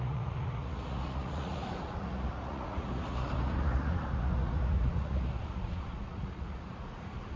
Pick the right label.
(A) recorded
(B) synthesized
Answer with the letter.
B